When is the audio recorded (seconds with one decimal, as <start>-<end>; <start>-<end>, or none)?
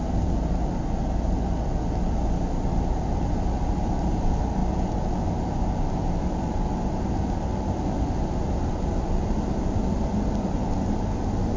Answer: 0.0-4.6; 5.1-11.6